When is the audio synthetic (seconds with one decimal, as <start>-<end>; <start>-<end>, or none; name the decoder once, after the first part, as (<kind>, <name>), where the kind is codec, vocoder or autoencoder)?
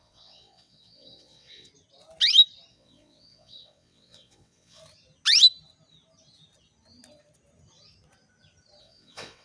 0.0-1.7 (vocoder, WaveNeXt); 2.7-4.8; 8.8-9.4